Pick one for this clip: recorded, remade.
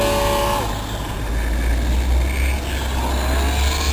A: recorded